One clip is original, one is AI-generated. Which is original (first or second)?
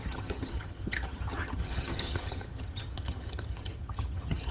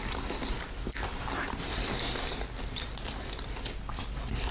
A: second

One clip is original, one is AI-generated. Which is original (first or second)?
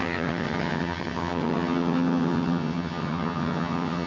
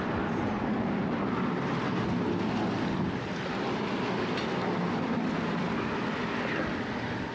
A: second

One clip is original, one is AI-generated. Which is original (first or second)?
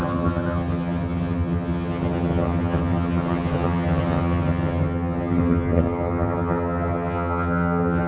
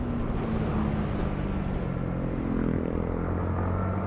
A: second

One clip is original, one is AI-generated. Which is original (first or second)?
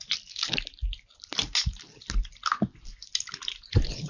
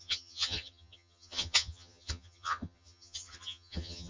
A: first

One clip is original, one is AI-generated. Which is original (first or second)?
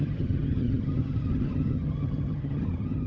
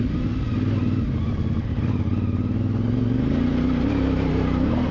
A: second